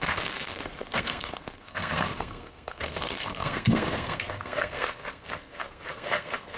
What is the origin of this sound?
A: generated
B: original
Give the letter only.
A